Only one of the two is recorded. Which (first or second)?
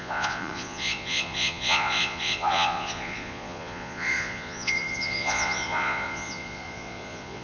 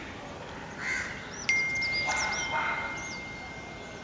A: second